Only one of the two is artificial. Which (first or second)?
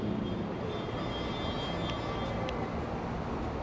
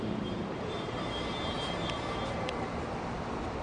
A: second